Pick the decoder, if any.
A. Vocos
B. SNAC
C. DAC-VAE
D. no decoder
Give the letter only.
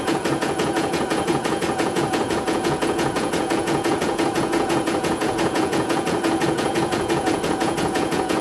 A